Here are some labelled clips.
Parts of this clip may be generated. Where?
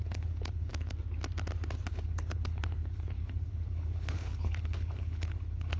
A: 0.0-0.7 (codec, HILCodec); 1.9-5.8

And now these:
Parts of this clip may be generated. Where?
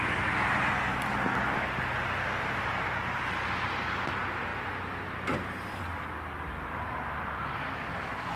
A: none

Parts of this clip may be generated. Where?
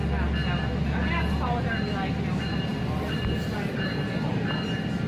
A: none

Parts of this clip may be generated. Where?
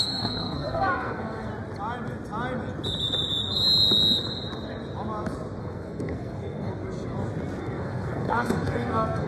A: 0.0-1.5 (codec, SNAC); 5.6-6.8; 7.6-9.3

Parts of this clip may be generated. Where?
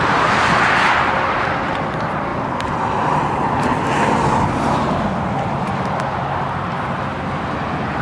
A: none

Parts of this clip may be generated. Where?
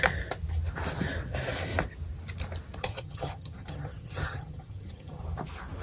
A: 2.8-5.2 (vocoder, HiFi-GAN)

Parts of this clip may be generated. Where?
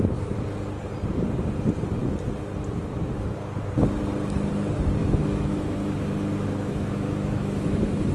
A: 5.0-8.1 (autoencoder, DAC-VAE)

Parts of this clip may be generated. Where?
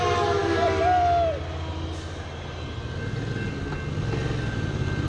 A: none